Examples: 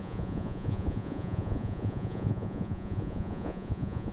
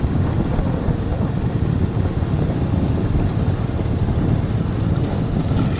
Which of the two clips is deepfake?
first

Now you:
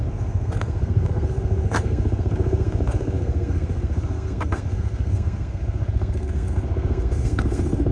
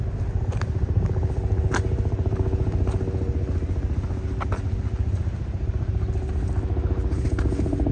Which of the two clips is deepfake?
first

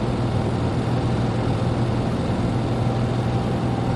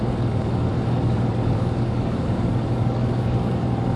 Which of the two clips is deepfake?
second